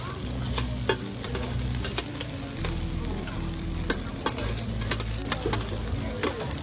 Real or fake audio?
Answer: real